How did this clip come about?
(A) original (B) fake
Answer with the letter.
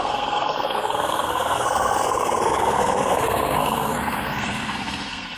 B